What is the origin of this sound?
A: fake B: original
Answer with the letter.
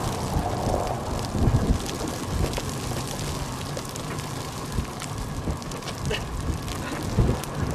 B